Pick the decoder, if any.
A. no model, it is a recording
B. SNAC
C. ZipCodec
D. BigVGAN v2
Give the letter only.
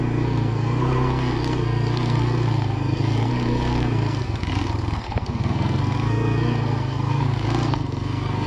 B